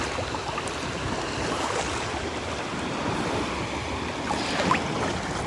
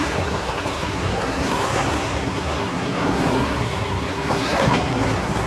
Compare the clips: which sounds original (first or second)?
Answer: first